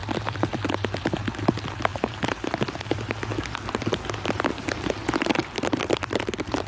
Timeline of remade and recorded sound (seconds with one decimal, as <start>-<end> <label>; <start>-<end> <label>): 0.0-0.5 remade; 0.5-1.9 recorded; 1.9-2.5 remade; 2.5-5.4 recorded; 5.4-6.7 remade